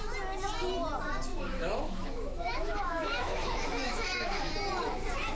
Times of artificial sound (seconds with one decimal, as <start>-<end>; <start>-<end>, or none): 1.3-4.5